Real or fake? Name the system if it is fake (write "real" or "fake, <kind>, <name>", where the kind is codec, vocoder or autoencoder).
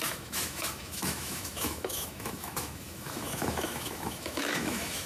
fake, autoencoder, DAC-VAE